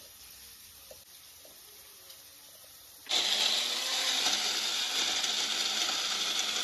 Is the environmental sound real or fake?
fake